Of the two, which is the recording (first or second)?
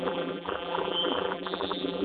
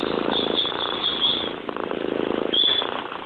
second